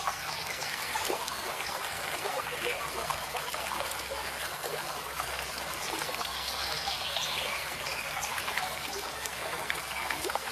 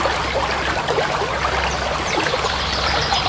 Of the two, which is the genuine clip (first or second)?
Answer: second